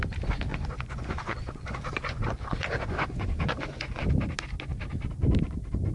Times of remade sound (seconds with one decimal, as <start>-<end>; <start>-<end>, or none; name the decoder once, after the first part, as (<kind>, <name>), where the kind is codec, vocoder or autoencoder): 0.5-4.0 (vocoder, Vocos)